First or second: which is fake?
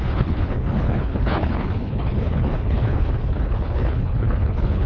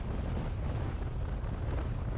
first